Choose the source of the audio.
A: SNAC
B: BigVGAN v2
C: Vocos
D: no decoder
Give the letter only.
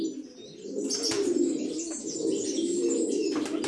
D